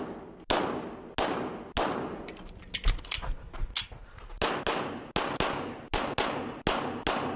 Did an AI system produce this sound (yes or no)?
no